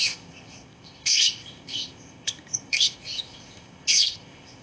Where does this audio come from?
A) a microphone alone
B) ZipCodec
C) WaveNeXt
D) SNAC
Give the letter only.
B